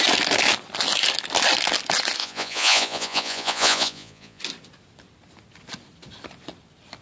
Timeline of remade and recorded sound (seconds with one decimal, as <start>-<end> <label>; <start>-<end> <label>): 0.0-2.2 recorded; 2.2-4.4 remade; 4.4-7.0 recorded